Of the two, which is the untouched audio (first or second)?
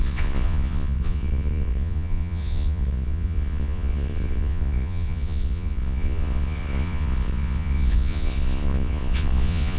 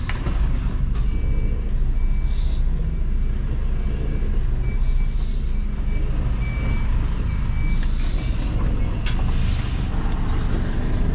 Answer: second